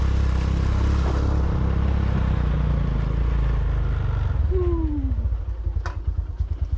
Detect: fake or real real